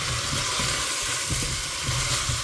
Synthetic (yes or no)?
no